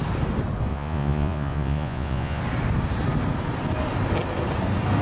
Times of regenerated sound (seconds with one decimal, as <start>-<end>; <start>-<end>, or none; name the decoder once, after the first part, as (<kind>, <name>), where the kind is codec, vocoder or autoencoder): 0.7-2.4 (vocoder, Vocos)